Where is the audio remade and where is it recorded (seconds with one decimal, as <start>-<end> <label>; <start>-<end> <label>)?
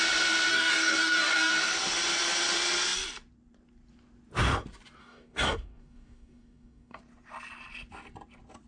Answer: 0.0-0.5 recorded; 0.5-1.5 remade; 1.5-5.0 recorded; 5.0-7.0 remade; 7.0-8.7 recorded